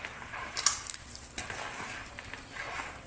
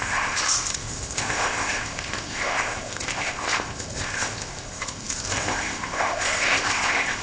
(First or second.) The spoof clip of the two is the second